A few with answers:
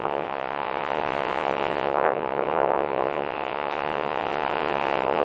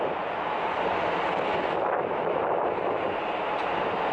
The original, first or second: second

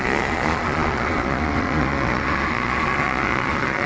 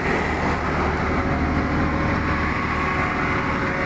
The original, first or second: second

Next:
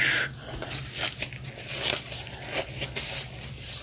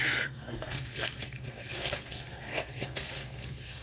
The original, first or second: first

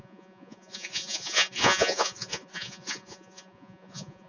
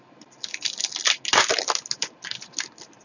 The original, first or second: second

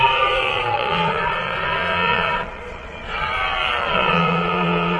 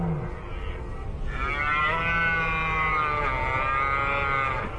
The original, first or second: second